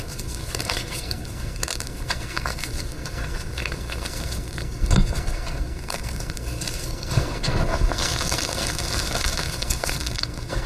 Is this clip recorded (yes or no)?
no